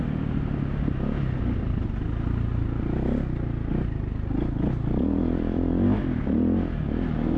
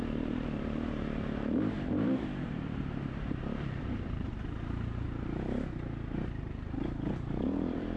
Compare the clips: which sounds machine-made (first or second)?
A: second